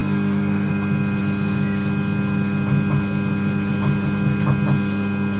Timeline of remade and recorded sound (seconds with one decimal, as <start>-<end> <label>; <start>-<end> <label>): 0.0-0.7 remade; 0.7-5.4 recorded

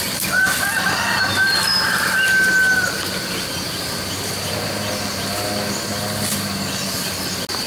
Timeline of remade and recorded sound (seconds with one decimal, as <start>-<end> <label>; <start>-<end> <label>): 0.0-7.7 recorded

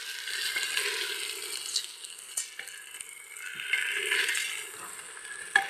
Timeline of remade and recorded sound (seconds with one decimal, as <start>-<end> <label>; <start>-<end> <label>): 0.0-1.7 recorded; 1.7-2.3 remade; 2.3-5.7 recorded

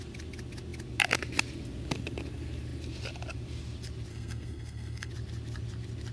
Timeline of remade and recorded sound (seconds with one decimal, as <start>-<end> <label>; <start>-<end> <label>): 0.0-4.1 recorded; 4.1-5.1 remade; 5.1-6.1 recorded

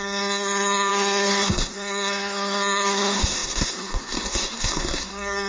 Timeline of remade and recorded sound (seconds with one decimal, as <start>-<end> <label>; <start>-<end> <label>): 0.0-5.5 remade